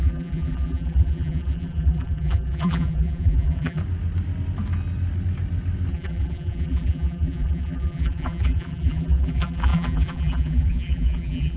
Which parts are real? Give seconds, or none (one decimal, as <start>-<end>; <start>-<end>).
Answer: 3.8-5.9